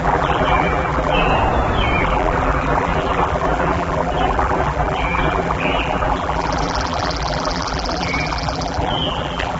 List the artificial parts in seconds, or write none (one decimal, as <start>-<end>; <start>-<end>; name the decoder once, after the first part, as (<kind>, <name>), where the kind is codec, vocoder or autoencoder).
0.0-1.3 (vocoder, BigVGAN v2); 2.0-9.6